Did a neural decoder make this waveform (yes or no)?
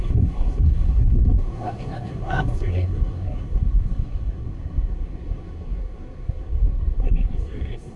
yes